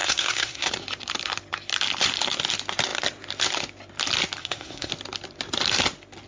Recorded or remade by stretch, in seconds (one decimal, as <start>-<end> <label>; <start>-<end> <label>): 0.0-0.7 remade; 0.7-4.4 recorded; 4.4-4.9 remade; 4.9-6.3 recorded